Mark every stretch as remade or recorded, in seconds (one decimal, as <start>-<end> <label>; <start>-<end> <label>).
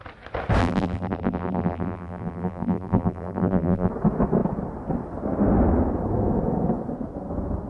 0.0-0.6 recorded; 0.6-3.9 remade; 3.9-7.7 recorded